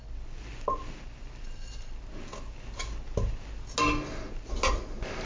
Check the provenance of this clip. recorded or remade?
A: recorded